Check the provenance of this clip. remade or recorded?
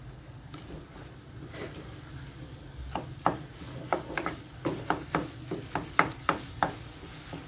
recorded